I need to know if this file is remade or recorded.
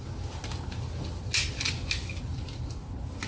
recorded